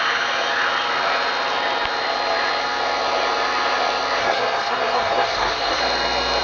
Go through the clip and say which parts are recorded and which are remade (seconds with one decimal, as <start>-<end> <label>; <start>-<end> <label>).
0.0-4.2 recorded; 4.2-5.8 remade; 5.8-6.4 recorded